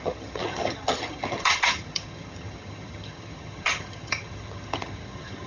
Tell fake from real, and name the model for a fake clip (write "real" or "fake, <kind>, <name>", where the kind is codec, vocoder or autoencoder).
fake, vocoder, HiFi-GAN